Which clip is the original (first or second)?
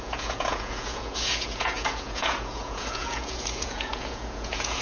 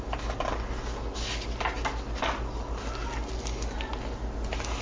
second